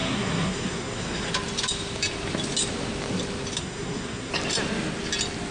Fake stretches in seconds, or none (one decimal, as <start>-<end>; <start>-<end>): 0.0-1.3; 3.6-4.3